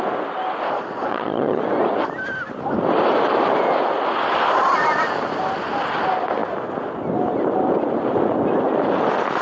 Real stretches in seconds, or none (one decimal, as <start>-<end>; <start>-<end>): 0.0-1.1; 1.6-9.4